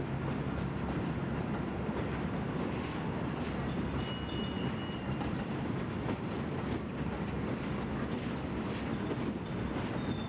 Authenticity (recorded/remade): recorded